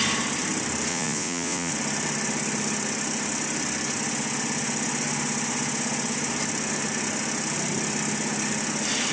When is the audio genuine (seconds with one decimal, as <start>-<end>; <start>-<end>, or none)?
0.0-0.9; 1.7-9.1